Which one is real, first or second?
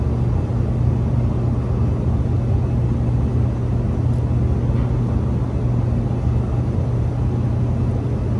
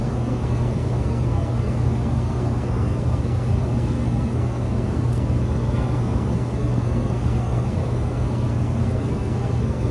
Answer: first